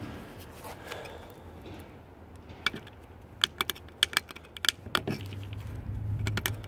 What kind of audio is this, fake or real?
real